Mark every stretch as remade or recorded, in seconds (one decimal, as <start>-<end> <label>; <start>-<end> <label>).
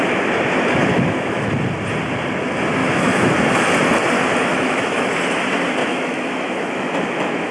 0.0-0.8 recorded; 0.8-1.5 remade; 1.5-2.8 recorded; 2.8-3.3 remade; 3.3-4.5 recorded; 4.5-5.1 remade; 5.1-5.8 recorded; 5.8-7.5 remade